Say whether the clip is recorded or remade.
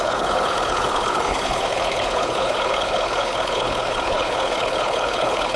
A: remade